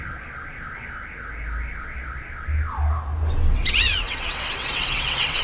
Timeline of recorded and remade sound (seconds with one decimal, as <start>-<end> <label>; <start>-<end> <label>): 0.0-3.5 recorded; 3.5-5.4 remade